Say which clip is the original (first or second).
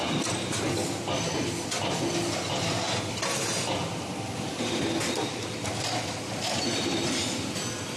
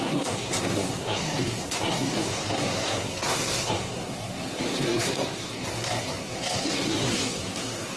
first